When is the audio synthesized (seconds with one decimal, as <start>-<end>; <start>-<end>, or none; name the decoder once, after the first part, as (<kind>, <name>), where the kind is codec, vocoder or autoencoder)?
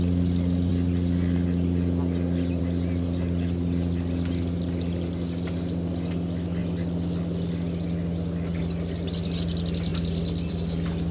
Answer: none